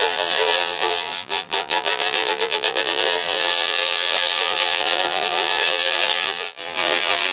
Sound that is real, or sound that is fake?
fake